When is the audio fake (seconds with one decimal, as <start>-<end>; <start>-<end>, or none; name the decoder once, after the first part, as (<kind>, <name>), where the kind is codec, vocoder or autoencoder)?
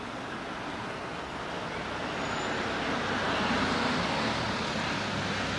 0.8-1.4 (codec, SNAC)